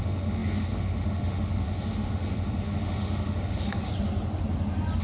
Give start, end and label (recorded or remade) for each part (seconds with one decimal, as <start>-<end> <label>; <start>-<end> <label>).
0.0-3.9 remade; 3.9-5.0 recorded